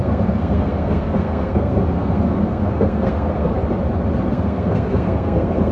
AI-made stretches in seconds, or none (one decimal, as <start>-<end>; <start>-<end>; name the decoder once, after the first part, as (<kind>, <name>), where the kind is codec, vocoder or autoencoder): 0.0-3.5 (codec, SNAC); 4.3-5.7